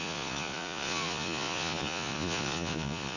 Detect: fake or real fake